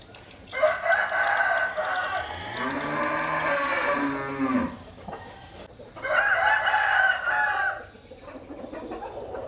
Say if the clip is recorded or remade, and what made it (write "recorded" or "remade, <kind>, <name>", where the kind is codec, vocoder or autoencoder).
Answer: recorded